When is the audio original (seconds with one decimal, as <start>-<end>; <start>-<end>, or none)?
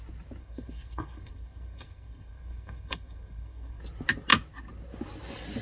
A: 0.0-0.4; 3.8-5.6